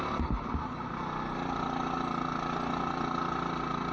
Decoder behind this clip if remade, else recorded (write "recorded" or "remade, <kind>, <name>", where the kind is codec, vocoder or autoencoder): recorded